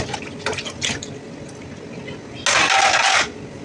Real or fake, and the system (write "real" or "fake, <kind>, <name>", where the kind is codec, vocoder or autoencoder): real